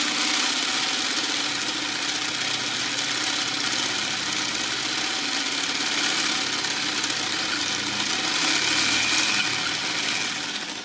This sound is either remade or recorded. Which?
recorded